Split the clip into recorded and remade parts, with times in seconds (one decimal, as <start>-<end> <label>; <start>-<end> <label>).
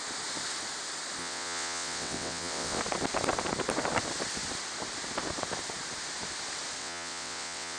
0.0-1.2 recorded; 1.2-2.8 remade; 2.8-6.8 recorded; 6.8-7.8 remade